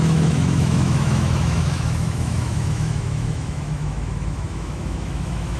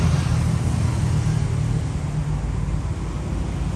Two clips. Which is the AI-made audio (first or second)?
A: first